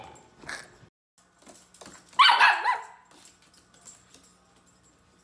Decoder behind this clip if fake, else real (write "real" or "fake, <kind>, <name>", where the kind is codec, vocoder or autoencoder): real